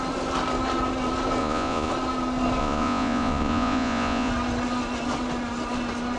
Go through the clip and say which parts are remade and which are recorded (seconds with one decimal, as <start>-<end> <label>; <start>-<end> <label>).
0.0-1.4 recorded; 1.4-1.9 remade; 1.9-2.6 recorded; 2.6-4.3 remade; 4.3-6.2 recorded